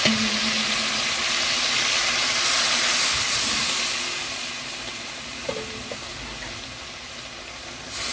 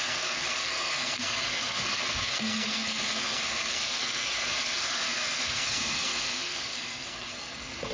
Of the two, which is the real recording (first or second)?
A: first